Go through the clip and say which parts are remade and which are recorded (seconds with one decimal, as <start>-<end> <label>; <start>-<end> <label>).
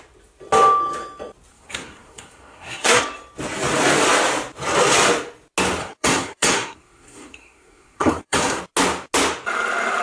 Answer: 0.0-1.5 recorded; 1.5-3.0 remade; 3.0-5.8 recorded; 5.8-8.6 remade; 8.6-10.0 recorded